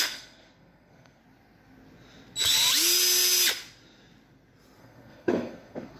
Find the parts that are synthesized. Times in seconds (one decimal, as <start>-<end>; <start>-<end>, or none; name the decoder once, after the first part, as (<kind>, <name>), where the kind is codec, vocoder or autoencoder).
0.0-1.2 (codec, SNAC); 4.8-6.0

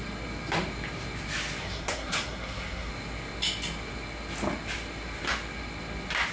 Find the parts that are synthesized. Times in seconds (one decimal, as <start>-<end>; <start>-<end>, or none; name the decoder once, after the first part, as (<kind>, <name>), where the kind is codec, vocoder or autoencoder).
1.6-2.9 (codec, SNAC)

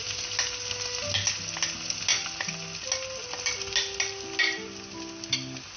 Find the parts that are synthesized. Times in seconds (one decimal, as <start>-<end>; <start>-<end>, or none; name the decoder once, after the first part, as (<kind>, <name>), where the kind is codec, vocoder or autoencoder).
none